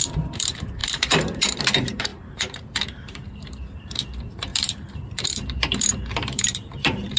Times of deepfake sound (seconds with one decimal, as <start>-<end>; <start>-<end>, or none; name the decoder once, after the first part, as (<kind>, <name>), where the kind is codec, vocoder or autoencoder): 0.0-7.2 (vocoder, BigVGAN v2)